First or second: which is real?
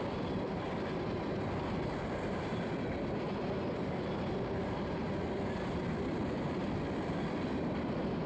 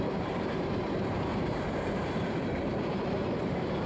first